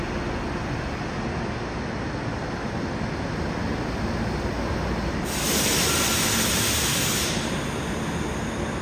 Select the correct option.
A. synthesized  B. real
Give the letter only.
B